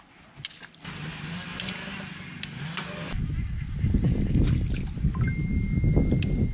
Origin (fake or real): real